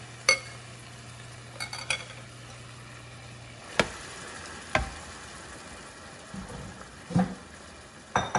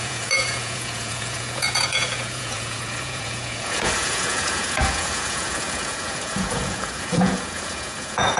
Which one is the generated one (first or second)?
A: second